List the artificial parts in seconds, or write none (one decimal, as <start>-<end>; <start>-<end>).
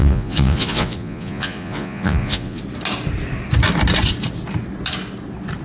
0.0-2.6